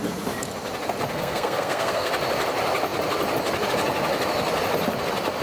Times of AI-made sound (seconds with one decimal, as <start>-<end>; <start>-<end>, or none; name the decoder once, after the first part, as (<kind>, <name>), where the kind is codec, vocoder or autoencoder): 1.1-2.1 (codec, SNAC)